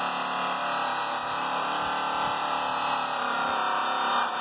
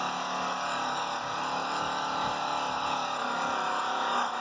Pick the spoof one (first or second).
second